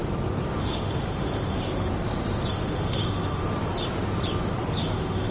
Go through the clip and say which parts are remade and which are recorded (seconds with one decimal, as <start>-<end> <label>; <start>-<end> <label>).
0.0-0.6 recorded; 0.6-1.9 remade; 1.9-2.5 recorded; 2.5-3.4 remade; 3.4-4.8 recorded; 4.8-5.3 remade